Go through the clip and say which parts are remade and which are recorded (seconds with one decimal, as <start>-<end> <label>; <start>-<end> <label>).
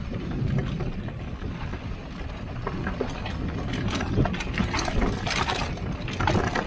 0.0-6.7 recorded